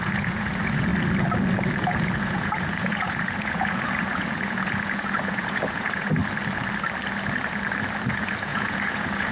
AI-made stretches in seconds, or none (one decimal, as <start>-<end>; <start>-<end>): 0.0-0.9; 1.8-6.2; 8.1-9.3